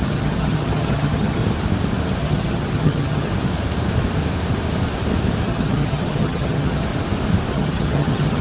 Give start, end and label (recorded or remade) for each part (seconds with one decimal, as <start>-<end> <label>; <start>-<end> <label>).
0.0-1.4 remade; 1.4-2.2 recorded; 2.2-3.3 remade; 3.3-5.4 recorded; 5.4-6.9 remade; 6.9-7.5 recorded; 7.5-8.4 remade